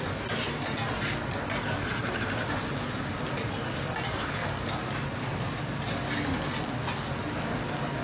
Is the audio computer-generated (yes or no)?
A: no